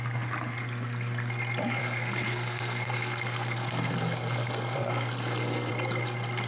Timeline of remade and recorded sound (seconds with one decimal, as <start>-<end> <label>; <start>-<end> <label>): 0.0-1.8 recorded; 1.8-5.7 remade; 5.7-6.5 recorded

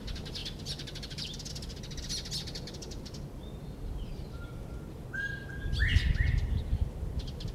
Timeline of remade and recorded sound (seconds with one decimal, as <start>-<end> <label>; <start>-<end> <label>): 0.0-0.4 recorded; 0.4-1.5 remade; 1.5-5.9 recorded; 5.9-6.9 remade; 6.9-7.5 recorded

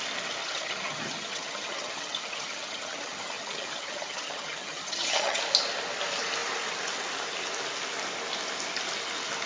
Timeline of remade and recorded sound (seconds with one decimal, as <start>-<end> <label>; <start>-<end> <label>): 0.0-0.4 recorded; 0.4-5.4 remade; 5.4-9.5 recorded